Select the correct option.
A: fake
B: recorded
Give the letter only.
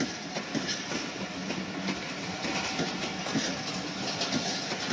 B